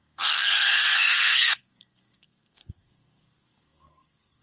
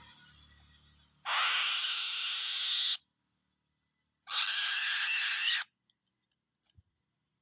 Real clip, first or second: second